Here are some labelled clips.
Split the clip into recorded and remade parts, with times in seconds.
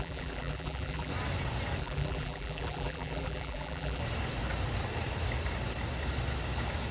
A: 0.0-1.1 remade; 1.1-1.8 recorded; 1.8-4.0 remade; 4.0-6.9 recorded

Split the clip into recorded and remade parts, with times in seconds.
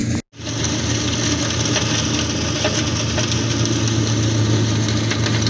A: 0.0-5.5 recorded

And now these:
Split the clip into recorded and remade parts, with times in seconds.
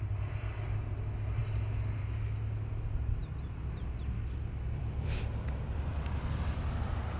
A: 0.0-7.2 recorded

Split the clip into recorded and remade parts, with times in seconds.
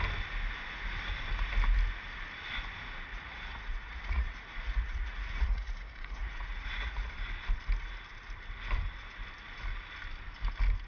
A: 0.0-3.1 recorded; 3.1-7.1 remade; 7.1-10.9 recorded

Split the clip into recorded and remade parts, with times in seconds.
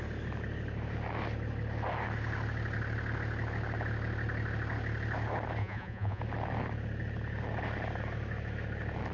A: 0.0-5.6 recorded; 5.6-6.2 remade; 6.2-9.1 recorded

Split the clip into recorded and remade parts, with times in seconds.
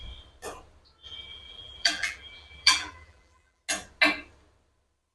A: 0.0-1.3 recorded; 1.3-3.6 remade; 3.6-5.1 recorded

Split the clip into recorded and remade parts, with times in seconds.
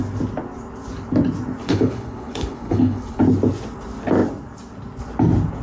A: 0.0-1.6 recorded; 1.6-3.2 remade; 3.2-5.6 recorded